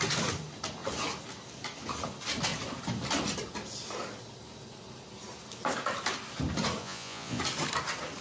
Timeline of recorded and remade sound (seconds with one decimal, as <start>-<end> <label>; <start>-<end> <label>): 0.0-6.8 recorded; 6.8-7.4 remade; 7.4-8.2 recorded